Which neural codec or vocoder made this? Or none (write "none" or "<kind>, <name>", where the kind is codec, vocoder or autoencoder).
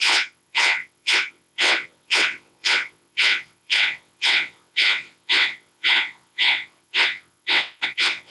vocoder, WaveNeXt